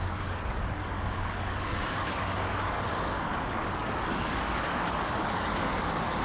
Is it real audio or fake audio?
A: fake